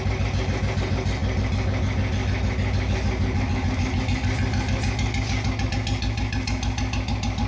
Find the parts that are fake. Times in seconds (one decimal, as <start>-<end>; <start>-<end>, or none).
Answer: none